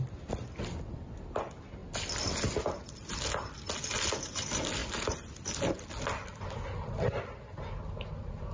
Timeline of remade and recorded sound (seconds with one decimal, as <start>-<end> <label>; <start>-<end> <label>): 0.0-8.5 recorded